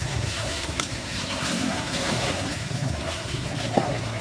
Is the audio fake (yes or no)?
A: yes